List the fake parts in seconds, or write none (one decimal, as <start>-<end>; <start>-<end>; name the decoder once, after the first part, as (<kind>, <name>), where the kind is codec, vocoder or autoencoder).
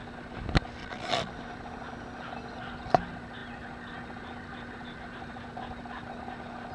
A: 0.8-1.3 (vocoder, Vocos)